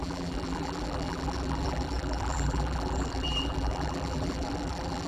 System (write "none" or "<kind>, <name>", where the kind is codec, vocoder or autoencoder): vocoder, BigVGAN v2